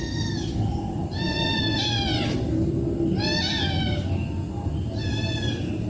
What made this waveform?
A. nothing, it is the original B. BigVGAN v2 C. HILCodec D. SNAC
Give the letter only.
A